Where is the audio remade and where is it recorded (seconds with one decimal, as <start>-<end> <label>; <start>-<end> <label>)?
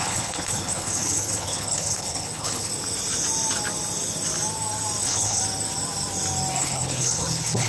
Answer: 0.0-2.7 remade; 2.7-5.0 recorded; 5.0-5.4 remade; 5.4-6.6 recorded; 6.6-7.7 remade